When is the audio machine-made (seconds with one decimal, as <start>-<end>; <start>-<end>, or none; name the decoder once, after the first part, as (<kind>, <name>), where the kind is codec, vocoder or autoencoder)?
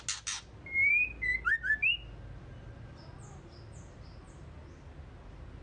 none